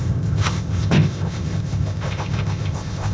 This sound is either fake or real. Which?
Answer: fake